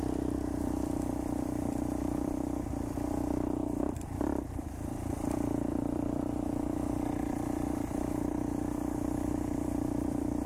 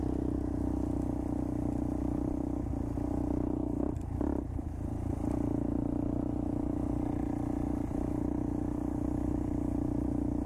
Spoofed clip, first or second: first